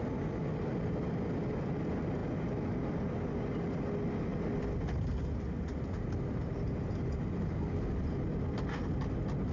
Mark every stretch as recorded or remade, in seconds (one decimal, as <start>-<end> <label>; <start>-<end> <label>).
0.0-9.5 recorded